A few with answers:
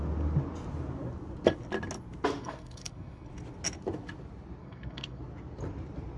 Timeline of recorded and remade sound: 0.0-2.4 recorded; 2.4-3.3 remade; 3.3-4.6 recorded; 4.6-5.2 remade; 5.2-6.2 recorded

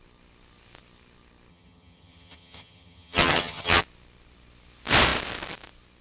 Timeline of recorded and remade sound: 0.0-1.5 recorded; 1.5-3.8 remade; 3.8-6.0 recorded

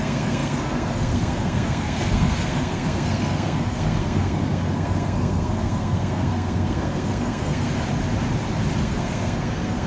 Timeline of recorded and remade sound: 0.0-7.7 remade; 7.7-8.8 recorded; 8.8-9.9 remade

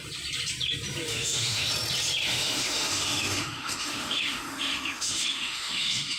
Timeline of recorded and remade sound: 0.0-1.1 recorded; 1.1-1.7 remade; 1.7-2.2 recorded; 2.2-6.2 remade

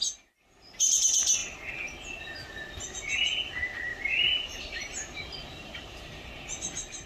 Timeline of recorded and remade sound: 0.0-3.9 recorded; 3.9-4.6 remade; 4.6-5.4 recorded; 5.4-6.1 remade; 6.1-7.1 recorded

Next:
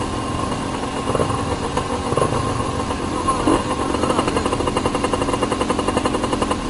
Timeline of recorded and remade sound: 0.0-1.2 recorded; 1.2-5.2 remade; 5.2-6.7 recorded